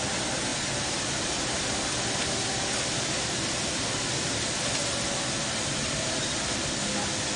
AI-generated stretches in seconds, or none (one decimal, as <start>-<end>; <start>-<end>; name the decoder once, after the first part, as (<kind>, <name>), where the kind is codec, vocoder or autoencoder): none